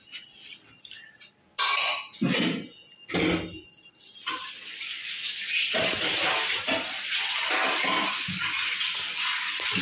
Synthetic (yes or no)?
no